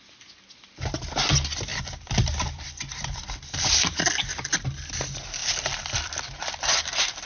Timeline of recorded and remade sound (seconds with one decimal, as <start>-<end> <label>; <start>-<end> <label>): 0.0-1.7 recorded; 1.7-3.9 remade; 3.9-5.4 recorded; 5.4-7.3 remade